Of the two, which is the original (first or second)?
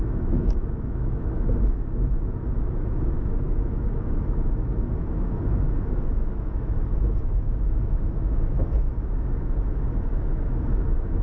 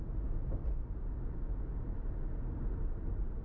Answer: second